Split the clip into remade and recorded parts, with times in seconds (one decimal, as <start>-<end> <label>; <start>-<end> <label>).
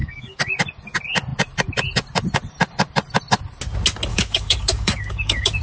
0.0-0.5 remade; 0.5-4.1 recorded; 4.1-5.6 remade